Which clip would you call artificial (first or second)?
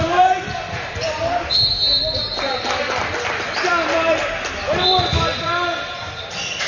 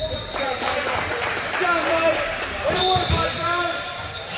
second